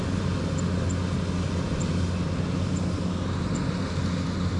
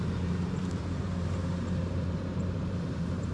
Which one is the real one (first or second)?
first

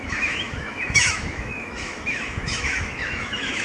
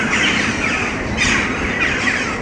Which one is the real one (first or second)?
second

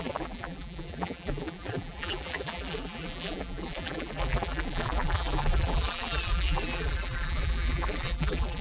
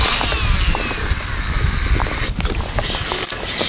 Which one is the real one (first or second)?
second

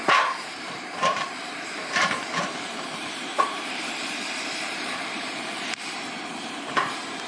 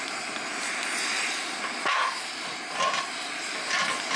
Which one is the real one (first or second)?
second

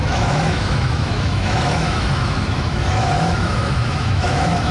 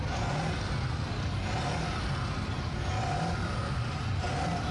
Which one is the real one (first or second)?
second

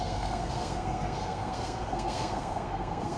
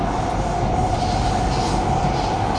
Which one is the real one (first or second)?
second